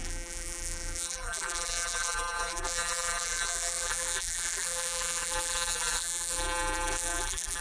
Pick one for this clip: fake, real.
fake